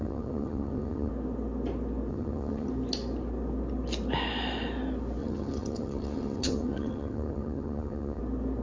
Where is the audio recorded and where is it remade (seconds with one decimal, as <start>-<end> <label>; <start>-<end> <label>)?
0.0-1.1 remade; 1.1-2.1 recorded; 2.1-2.7 remade; 2.7-5.2 recorded; 5.2-8.2 remade; 8.2-8.6 recorded